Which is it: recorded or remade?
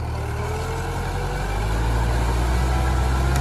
recorded